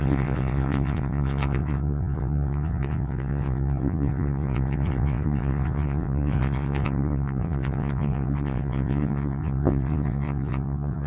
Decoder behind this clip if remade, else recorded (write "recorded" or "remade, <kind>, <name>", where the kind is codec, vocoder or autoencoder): remade, vocoder, WaveNeXt